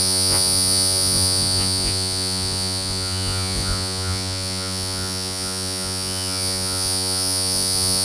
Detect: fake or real fake